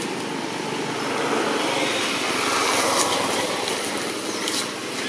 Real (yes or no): yes